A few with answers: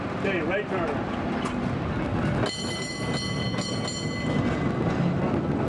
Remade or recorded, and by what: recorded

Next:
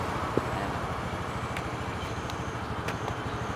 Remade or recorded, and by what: recorded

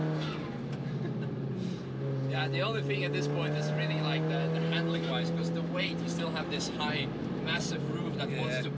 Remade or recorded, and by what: recorded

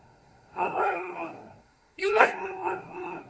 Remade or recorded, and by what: remade, codec, SNAC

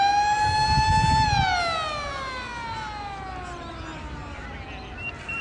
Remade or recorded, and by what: recorded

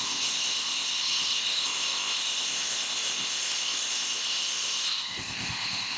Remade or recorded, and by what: remade, codec, ZipCodec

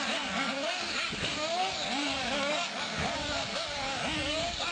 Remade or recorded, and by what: remade, codec, DAC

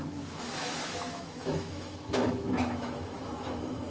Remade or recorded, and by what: remade, autoencoder, DAC-VAE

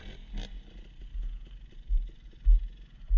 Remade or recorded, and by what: recorded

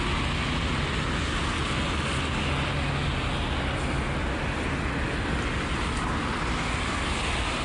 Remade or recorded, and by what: recorded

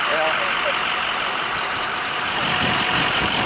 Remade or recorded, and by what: recorded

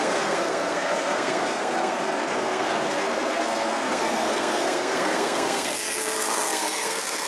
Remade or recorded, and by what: remade, codec, SNAC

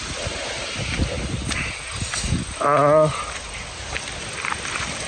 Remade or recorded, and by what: recorded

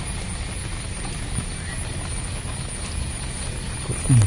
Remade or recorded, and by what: recorded